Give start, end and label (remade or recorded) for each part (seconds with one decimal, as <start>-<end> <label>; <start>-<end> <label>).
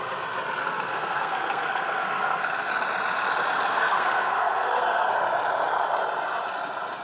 0.0-0.6 recorded; 0.6-2.7 remade; 2.7-3.7 recorded; 3.7-5.1 remade; 5.1-7.0 recorded